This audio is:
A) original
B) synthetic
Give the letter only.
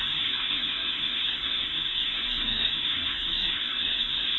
B